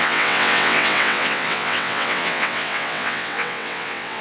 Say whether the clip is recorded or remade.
remade